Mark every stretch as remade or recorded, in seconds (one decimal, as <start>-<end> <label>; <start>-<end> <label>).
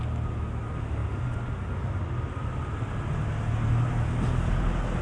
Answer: 0.0-5.0 recorded